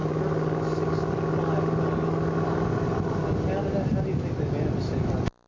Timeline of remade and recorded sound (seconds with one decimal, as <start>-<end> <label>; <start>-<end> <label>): 0.0-5.5 recorded